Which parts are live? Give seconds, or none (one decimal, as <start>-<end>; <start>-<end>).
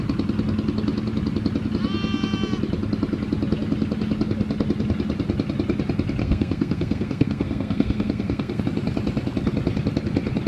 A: 0.0-6.2; 8.6-10.5